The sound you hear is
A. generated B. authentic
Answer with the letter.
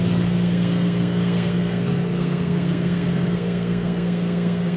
A